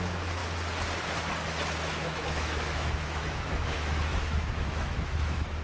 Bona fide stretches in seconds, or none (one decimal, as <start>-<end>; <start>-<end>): 0.4-1.9